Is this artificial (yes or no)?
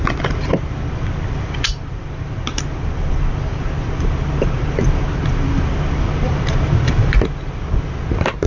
no